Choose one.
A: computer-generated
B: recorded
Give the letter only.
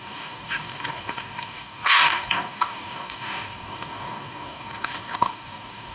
A